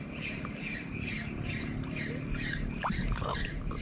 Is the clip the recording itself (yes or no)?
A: no